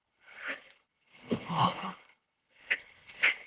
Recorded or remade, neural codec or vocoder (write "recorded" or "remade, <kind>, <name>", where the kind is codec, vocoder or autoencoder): remade, codec, HILCodec